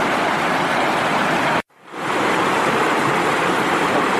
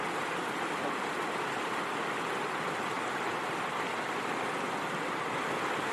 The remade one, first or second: first